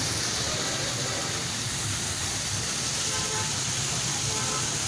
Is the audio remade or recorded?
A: recorded